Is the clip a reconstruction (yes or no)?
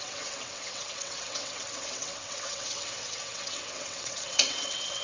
yes